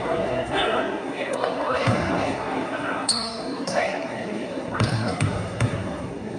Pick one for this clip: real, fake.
fake